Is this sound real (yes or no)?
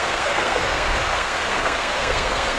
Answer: no